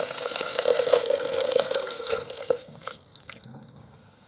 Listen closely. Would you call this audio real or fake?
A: fake